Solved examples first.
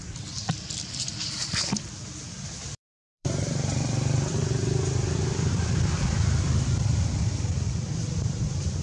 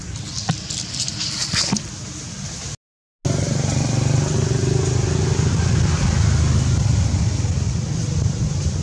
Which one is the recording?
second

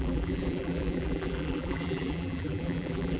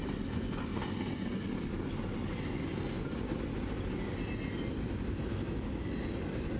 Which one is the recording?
second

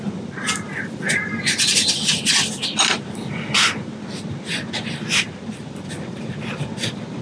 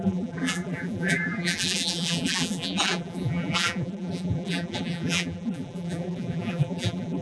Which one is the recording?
first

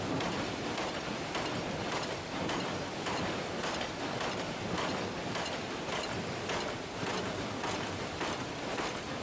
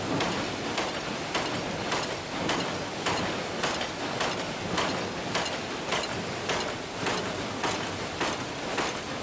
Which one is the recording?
second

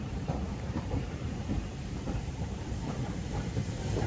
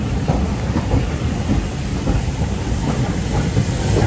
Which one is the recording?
second